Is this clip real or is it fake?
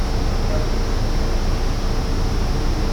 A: real